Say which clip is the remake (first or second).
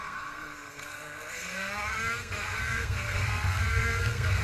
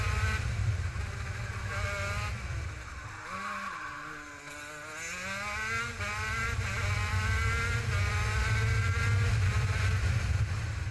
first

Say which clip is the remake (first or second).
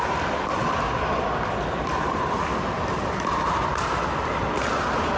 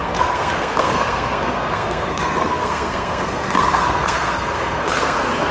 second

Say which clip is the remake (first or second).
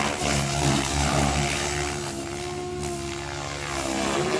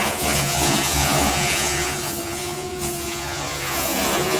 second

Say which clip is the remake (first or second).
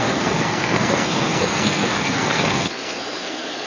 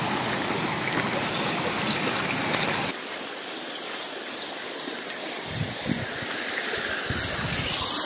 first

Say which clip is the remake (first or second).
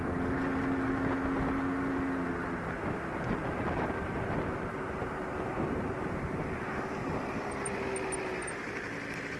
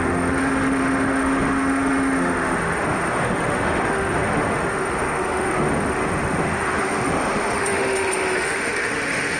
second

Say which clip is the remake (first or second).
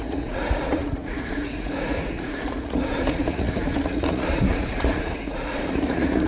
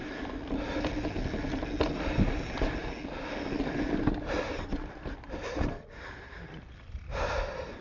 first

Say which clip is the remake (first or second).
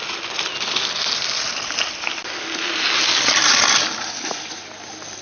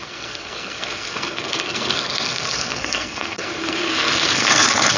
second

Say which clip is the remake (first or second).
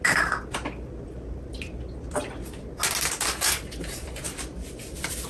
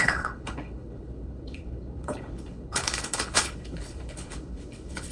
second